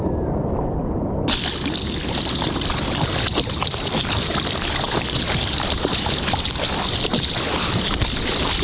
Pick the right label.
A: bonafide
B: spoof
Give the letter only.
B